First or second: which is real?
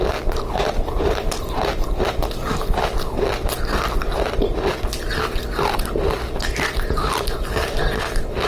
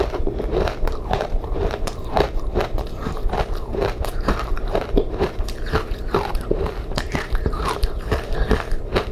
first